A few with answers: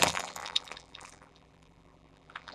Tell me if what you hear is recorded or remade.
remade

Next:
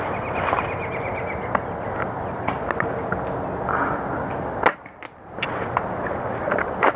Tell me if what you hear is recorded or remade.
recorded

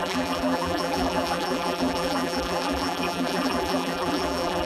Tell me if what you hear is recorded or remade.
remade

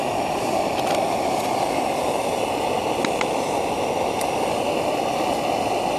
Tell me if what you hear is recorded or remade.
recorded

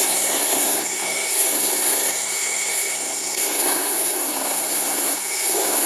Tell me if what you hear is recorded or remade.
remade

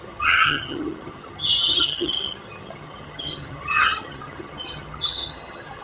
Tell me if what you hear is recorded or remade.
remade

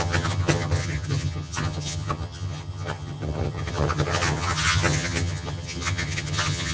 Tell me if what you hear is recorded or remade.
remade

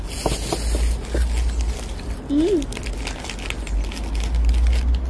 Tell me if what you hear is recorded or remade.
recorded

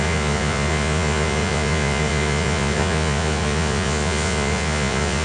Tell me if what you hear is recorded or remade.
remade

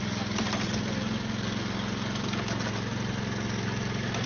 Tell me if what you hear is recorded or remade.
recorded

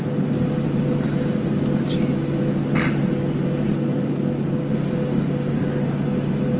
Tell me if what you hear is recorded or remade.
recorded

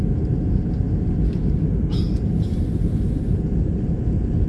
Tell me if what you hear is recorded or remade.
recorded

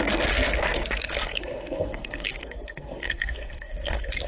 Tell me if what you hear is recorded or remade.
remade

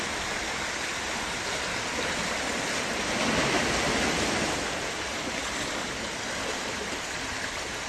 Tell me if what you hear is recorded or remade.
recorded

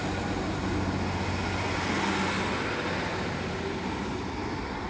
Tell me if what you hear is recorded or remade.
recorded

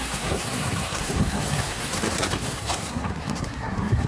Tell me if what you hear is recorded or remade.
remade